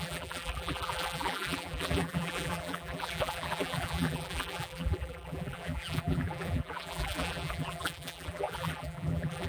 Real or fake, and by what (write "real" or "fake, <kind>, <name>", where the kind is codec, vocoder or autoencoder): fake, vocoder, BigVGAN v2